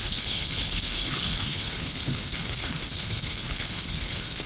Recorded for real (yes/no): no